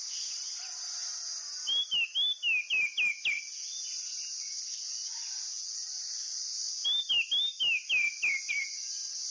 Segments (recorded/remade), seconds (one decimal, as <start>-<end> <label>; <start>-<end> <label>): 0.0-9.3 recorded